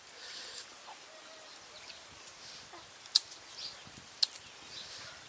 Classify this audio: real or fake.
real